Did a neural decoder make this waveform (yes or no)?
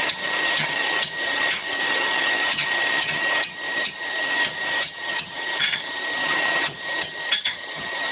yes